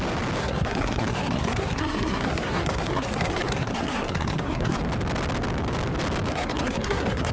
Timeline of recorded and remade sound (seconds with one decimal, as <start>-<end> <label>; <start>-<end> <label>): 0.0-0.4 recorded; 0.4-4.8 remade; 4.8-6.3 recorded; 6.3-7.3 remade